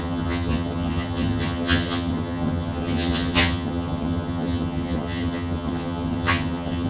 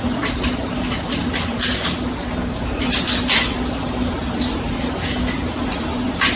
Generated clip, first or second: first